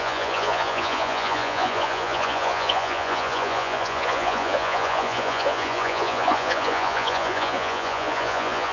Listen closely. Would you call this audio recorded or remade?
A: remade